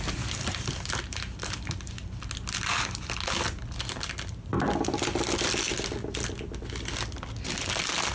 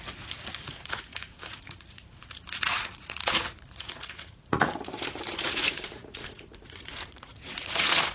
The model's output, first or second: second